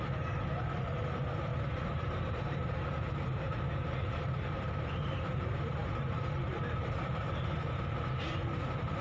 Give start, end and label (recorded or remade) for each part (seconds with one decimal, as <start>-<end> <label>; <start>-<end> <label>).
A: 0.0-9.0 remade